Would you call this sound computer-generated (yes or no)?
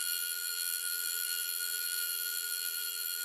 yes